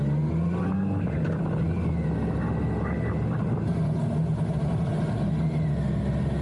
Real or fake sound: real